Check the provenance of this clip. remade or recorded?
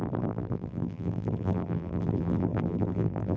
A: remade